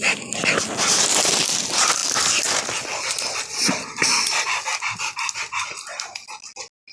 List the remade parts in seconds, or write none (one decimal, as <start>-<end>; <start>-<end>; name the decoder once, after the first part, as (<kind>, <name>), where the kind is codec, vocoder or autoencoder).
none